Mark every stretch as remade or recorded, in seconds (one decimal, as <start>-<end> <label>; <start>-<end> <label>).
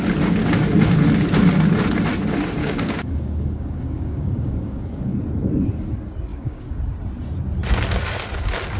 0.0-2.6 recorded; 2.6-5.1 remade; 5.1-6.3 recorded; 6.3-6.8 remade; 6.8-8.8 recorded